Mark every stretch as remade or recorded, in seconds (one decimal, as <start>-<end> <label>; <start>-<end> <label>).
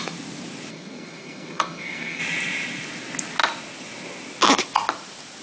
0.0-0.7 recorded; 0.7-2.2 remade; 2.2-5.4 recorded